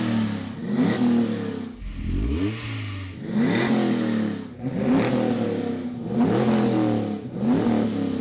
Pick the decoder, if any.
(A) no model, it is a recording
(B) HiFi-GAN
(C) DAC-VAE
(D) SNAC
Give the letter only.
A